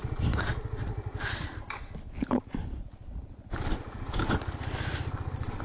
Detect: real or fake real